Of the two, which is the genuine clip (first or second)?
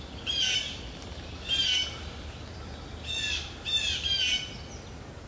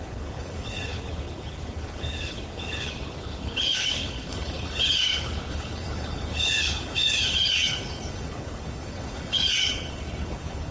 first